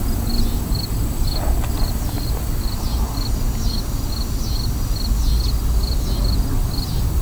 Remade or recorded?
recorded